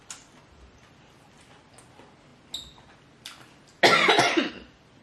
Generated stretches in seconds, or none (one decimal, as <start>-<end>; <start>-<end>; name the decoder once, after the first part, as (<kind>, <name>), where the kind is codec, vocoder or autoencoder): none